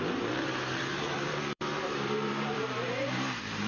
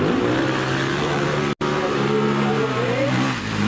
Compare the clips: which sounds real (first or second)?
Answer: second